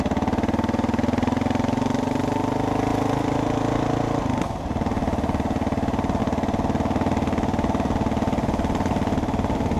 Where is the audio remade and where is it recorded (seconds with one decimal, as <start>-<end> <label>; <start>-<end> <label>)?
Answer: 0.0-9.8 recorded